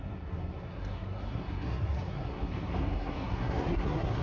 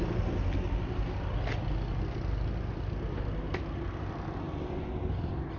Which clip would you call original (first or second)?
second